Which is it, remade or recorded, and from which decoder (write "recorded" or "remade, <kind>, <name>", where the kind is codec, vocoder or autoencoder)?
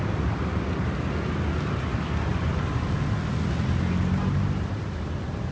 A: recorded